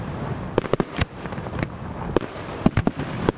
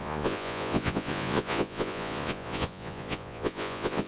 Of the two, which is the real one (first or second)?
first